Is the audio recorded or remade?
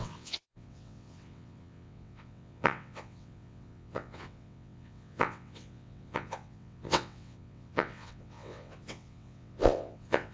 remade